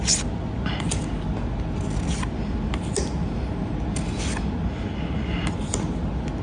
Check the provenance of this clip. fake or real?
real